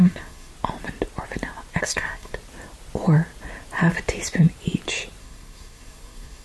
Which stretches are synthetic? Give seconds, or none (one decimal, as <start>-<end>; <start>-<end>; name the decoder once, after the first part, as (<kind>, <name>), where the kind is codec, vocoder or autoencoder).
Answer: 0.0-0.5 (codec, SNAC); 1.8-2.3; 5.2-6.4